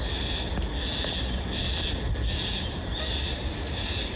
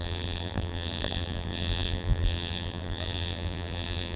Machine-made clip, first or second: second